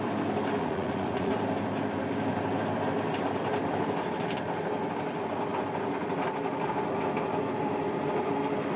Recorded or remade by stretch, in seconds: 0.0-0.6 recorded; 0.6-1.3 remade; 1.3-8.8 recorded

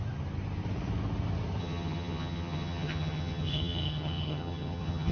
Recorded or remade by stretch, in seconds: 0.0-1.6 recorded; 1.6-5.1 remade

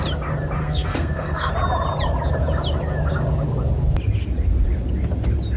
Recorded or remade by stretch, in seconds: 0.0-0.6 recorded; 0.6-1.5 remade; 1.5-5.6 recorded

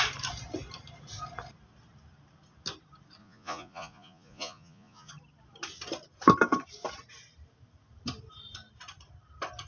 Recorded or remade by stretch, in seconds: 0.0-3.2 recorded; 3.2-5.1 remade; 5.1-9.7 recorded

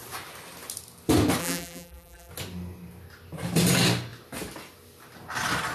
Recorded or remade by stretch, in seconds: 0.0-1.4 recorded; 1.4-2.3 remade; 2.3-5.7 recorded

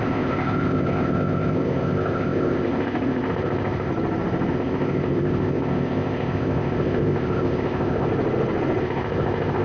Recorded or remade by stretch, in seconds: 0.0-3.9 remade; 3.9-4.5 recorded; 4.5-8.1 remade; 8.1-8.8 recorded; 8.8-9.6 remade

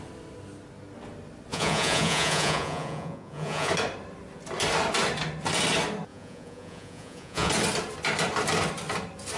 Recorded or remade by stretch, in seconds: 0.0-1.5 recorded; 1.5-3.7 remade; 3.7-6.1 recorded; 6.1-7.5 remade; 7.5-9.4 recorded